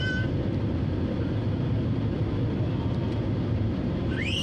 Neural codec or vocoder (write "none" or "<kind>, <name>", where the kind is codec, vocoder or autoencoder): none